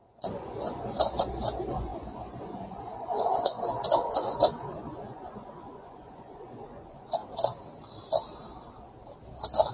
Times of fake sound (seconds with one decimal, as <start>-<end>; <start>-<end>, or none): 0.0-7.2